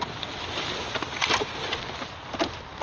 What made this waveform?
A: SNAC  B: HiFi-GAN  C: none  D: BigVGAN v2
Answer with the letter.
C